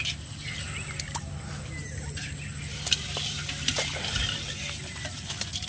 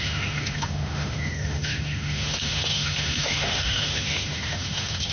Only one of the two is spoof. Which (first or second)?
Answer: second